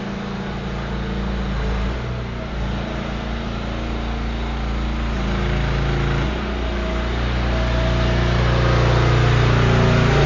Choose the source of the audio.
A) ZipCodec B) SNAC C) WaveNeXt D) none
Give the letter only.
D